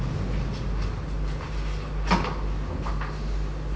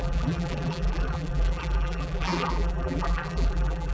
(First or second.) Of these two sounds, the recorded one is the first